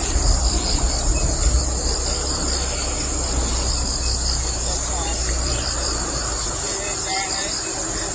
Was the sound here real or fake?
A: real